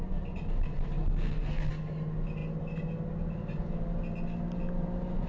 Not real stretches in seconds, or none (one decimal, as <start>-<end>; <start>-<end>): 1.0-1.7